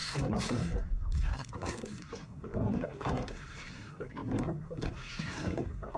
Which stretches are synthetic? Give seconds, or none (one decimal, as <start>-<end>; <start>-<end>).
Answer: 0.0-6.0